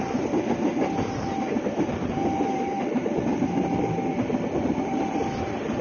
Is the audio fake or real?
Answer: fake